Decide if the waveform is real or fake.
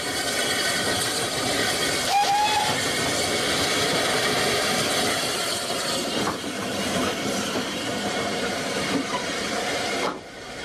fake